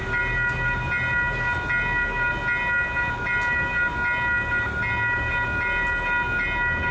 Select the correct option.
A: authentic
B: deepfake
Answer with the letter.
A